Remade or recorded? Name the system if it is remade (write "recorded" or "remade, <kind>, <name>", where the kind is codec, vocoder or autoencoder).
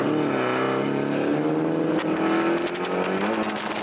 recorded